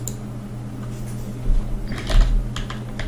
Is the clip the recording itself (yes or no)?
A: yes